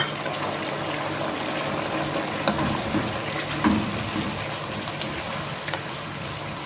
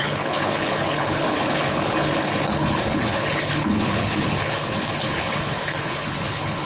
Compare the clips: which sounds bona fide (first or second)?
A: first